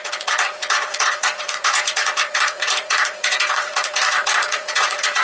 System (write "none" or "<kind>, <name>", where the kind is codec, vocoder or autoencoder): vocoder, Vocos